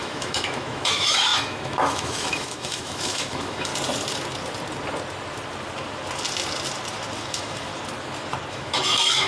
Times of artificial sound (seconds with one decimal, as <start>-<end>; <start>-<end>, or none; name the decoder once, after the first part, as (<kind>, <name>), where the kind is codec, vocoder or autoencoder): 0.0-3.7 (autoencoder, DAC-VAE); 7.2-7.7; 8.5-9.3

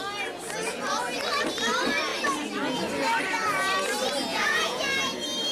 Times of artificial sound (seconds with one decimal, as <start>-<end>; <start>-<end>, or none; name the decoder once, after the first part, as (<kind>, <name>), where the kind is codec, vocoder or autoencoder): 4.3-5.0 (vocoder, Vocos)

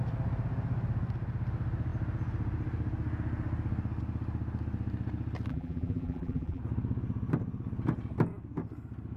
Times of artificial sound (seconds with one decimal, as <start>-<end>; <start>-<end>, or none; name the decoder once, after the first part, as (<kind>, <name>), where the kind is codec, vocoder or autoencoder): 5.5-6.6 (vocoder, BigVGAN v2)

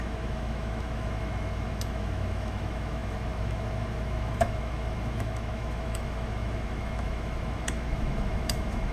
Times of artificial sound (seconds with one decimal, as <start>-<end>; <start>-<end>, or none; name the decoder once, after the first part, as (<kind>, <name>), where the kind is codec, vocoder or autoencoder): 0.0-8.9 (autoencoder, DAC-VAE)

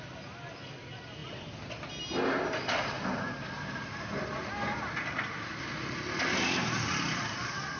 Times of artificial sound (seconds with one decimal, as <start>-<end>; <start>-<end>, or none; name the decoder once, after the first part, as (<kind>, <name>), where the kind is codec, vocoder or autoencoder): none